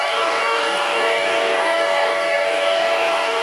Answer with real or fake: fake